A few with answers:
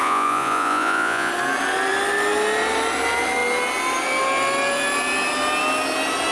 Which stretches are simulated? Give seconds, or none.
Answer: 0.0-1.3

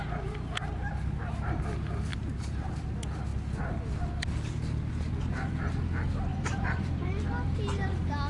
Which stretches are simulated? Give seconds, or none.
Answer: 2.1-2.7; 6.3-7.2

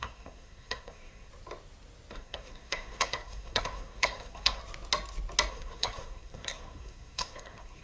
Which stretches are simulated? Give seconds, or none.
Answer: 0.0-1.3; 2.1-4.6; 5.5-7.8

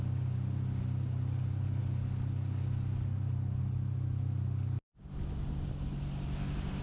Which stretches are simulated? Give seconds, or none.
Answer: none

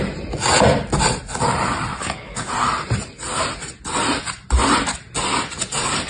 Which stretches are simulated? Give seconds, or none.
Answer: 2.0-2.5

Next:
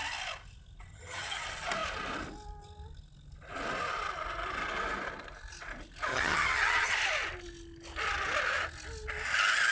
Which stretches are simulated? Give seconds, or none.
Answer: 0.9-1.4; 6.1-6.9

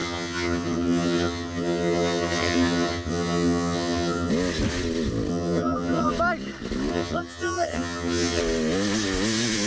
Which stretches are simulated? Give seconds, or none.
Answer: 0.0-4.3; 5.3-6.1; 6.9-8.4

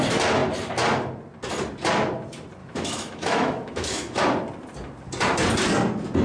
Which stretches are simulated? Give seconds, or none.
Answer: 2.6-4.2